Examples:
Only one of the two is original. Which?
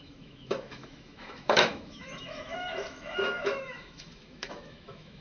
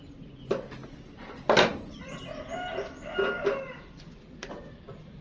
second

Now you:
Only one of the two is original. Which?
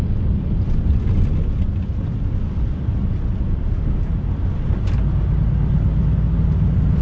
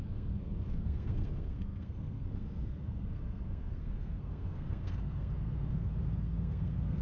first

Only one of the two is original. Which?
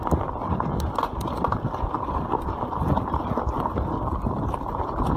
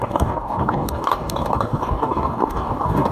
first